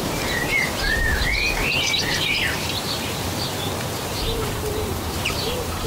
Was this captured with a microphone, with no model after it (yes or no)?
no